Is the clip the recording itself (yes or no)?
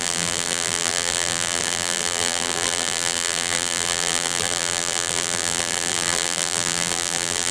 no